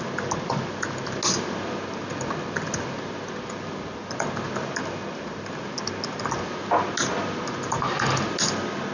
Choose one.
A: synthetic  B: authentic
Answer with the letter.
B